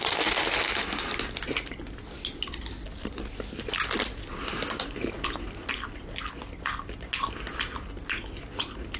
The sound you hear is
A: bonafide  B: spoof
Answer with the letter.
A